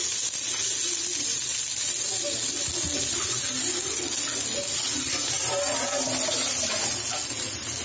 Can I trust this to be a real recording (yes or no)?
yes